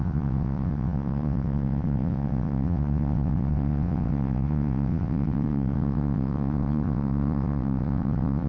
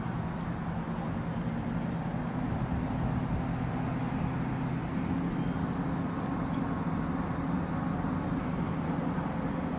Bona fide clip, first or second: second